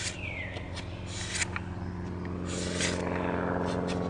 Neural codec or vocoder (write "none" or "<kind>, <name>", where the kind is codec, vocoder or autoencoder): none